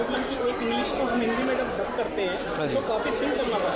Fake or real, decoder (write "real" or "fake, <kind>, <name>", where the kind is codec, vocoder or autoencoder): real